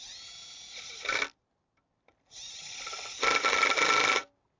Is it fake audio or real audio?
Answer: real